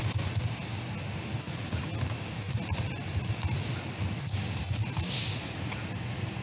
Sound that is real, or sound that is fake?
real